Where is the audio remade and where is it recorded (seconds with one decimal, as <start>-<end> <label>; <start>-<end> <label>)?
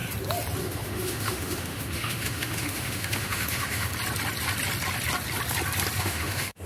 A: 0.0-0.6 recorded; 0.6-3.9 remade; 3.9-6.0 recorded; 6.0-6.7 remade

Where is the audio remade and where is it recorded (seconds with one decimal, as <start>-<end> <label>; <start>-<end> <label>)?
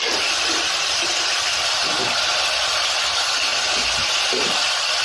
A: 0.0-5.0 recorded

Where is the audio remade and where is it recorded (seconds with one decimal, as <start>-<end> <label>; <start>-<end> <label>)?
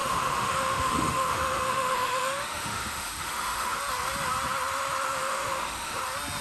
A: 0.0-3.8 remade; 3.8-5.2 recorded; 5.2-6.0 remade; 6.0-6.4 recorded